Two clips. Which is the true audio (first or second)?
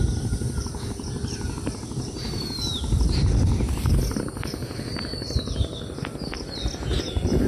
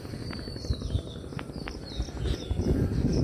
first